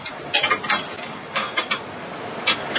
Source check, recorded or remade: recorded